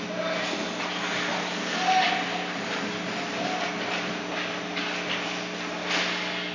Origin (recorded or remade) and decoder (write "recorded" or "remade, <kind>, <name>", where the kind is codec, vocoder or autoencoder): recorded